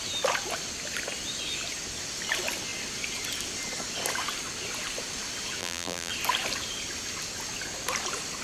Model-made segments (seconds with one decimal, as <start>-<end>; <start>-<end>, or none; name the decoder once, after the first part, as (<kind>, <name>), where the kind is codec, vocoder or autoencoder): 5.6-6.1 (vocoder, BigVGAN v2)